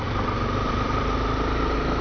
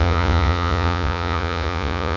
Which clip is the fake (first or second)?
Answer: second